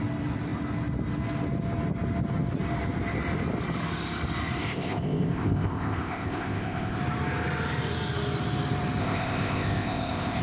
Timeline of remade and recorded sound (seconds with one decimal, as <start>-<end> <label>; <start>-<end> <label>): 0.0-4.6 recorded; 4.6-7.0 remade; 7.0-9.0 recorded; 9.0-10.4 remade